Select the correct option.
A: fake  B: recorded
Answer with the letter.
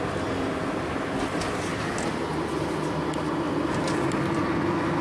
B